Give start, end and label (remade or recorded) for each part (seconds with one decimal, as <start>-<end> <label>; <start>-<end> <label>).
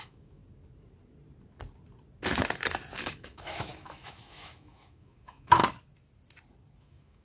0.0-0.4 remade; 0.4-3.0 recorded; 3.0-5.6 remade; 5.6-6.8 recorded; 6.8-7.2 remade